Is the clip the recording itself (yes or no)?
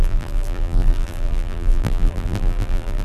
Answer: no